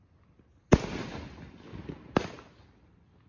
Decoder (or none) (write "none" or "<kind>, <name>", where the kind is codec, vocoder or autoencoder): none